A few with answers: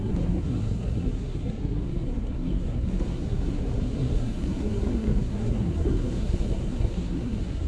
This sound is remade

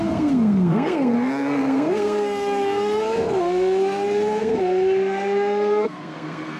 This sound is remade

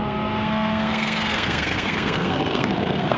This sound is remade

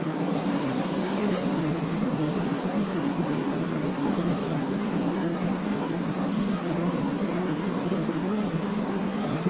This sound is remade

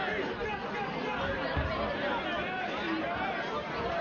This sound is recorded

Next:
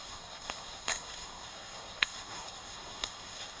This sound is remade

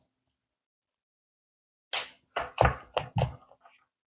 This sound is recorded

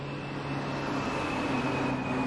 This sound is recorded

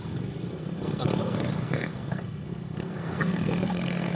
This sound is remade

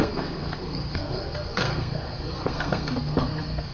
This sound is remade